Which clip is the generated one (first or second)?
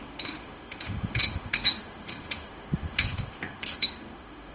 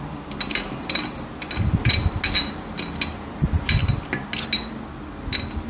first